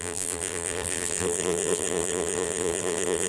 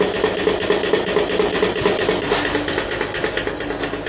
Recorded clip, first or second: second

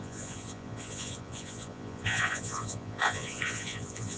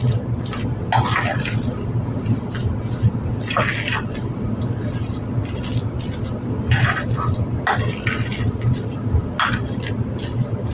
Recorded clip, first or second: second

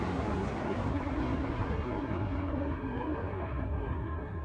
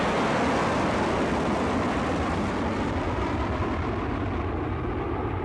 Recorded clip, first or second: second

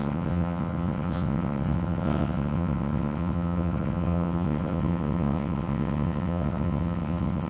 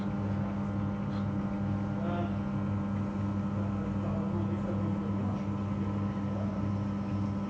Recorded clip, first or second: second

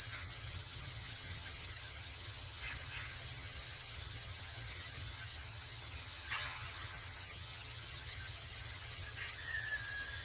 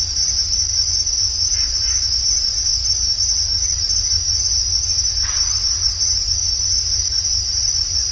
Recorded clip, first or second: second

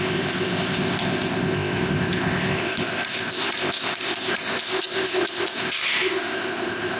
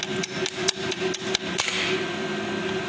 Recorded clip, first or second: second